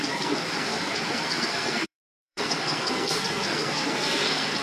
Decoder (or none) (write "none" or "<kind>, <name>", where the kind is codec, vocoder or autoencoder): codec, SNAC